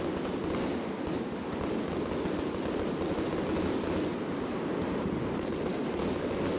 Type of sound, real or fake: real